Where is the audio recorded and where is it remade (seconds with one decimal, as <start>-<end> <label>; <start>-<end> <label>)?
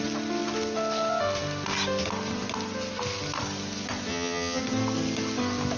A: 0.0-4.1 recorded; 4.1-4.6 remade; 4.6-5.8 recorded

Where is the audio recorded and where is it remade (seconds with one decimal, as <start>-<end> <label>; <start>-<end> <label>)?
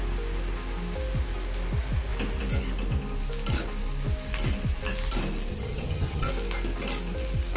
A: 0.0-5.5 recorded; 5.5-6.3 remade; 6.3-7.6 recorded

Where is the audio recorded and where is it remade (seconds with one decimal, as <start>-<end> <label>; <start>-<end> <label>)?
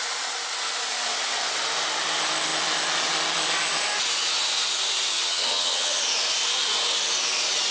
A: 0.0-5.1 recorded; 5.1-6.0 remade; 6.0-7.7 recorded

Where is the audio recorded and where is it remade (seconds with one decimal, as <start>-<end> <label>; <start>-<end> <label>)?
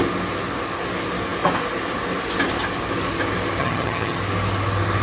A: 0.0-3.6 recorded; 3.6-4.2 remade; 4.2-5.0 recorded